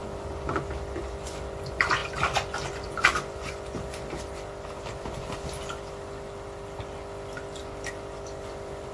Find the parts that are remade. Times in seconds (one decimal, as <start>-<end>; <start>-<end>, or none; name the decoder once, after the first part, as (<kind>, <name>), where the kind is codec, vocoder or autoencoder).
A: none